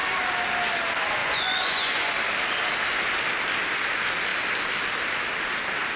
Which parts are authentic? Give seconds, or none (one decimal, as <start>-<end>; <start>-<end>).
0.0-1.2; 2.1-6.0